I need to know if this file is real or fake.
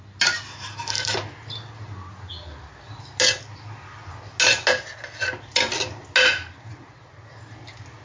real